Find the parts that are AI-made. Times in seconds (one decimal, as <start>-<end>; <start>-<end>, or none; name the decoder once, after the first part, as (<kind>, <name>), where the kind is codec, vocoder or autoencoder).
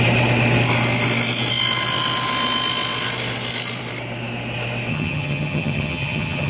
4.9-6.5 (vocoder, HiFi-GAN)